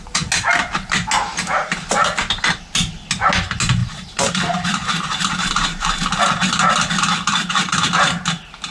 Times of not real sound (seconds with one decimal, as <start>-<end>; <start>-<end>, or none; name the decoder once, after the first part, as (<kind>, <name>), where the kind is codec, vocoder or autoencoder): 1.3-1.9 (vocoder, BigVGAN v2); 3.8-6.2